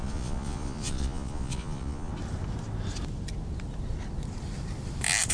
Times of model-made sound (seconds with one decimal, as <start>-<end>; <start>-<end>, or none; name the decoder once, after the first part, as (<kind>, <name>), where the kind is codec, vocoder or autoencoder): 0.0-2.1 (vocoder, Vocos)